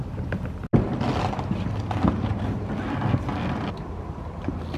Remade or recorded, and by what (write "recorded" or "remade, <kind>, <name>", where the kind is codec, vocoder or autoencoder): recorded